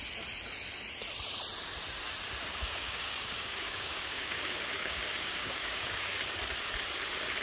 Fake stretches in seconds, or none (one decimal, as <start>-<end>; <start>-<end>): 2.5-6.1